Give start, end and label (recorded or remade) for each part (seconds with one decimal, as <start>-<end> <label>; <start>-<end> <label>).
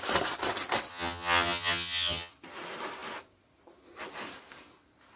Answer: 0.0-0.9 recorded; 0.9-2.3 remade; 2.3-5.2 recorded